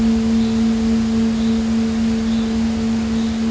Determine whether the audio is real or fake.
real